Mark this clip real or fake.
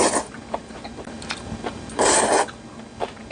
real